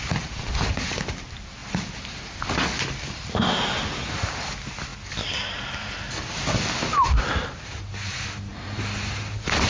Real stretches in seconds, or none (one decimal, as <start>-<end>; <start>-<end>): 0.0-8.5; 9.1-9.7